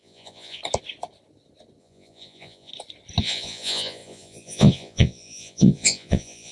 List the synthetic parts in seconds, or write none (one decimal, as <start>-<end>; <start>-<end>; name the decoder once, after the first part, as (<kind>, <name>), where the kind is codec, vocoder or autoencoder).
0.0-0.6 (vocoder, Vocos); 1.8-2.7; 3.2-6.5